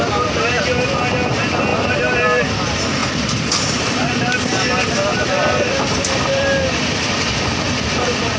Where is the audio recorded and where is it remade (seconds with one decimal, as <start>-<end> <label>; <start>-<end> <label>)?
0.0-1.7 recorded; 1.7-2.4 remade; 2.4-3.0 recorded; 3.0-8.0 remade; 8.0-8.4 recorded